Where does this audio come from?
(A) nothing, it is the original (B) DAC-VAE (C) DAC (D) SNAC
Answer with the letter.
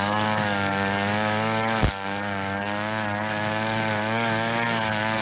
C